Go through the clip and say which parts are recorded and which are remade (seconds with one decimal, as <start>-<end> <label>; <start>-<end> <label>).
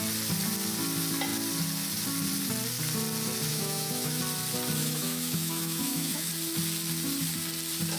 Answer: 0.0-3.5 recorded; 3.5-4.2 remade; 4.2-4.8 recorded; 4.8-6.3 remade; 6.3-8.0 recorded